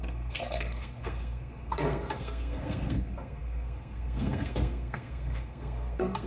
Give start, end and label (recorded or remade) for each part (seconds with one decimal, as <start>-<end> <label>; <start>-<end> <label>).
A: 0.0-6.3 remade